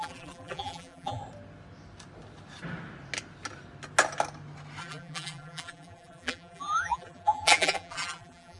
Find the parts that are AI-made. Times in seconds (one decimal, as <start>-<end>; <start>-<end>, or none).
0.0-1.2; 4.8-8.6

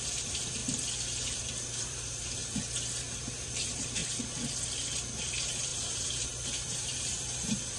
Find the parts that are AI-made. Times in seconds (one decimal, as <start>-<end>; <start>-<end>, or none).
0.0-0.6; 1.8-2.4; 3.3-4.0; 5.2-7.8

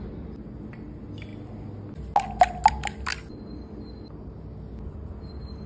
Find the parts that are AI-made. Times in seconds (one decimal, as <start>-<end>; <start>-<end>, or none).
none

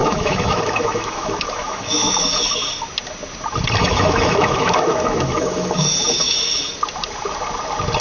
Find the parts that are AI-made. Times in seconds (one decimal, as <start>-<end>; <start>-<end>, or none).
0.0-2.4; 3.8-6.7

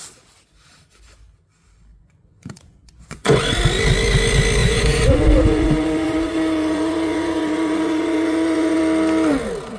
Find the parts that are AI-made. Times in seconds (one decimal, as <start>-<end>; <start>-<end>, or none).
1.9-3.4; 4.6-8.8

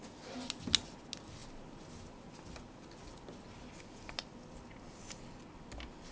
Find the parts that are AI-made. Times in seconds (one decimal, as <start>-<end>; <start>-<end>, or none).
none

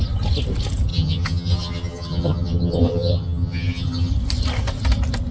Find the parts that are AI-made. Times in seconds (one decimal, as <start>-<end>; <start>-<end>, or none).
0.9-4.1

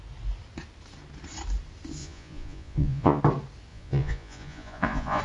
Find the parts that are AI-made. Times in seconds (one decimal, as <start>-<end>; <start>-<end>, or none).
2.0-3.2; 3.7-5.2